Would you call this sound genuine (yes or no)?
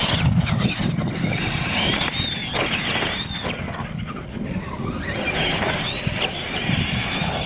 yes